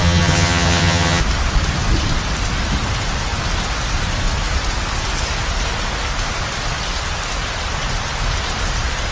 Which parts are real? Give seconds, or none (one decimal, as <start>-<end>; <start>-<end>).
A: 1.2-9.1